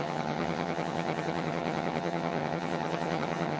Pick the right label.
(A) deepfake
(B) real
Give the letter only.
A